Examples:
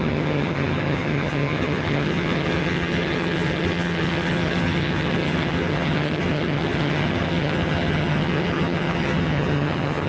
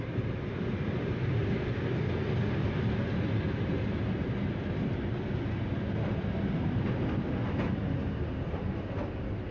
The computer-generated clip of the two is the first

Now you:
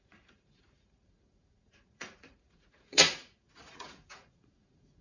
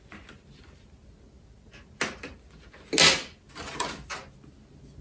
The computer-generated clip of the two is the first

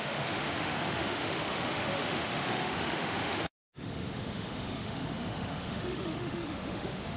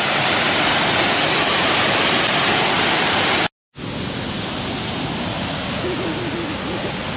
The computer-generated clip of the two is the first